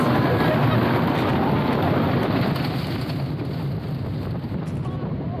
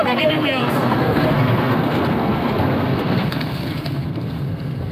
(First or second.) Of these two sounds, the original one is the first